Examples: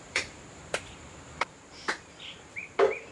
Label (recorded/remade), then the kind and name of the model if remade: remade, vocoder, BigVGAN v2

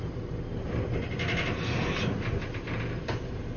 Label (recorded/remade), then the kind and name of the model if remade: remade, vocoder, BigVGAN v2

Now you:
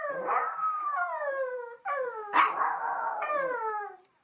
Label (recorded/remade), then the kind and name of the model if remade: remade, vocoder, BigVGAN v2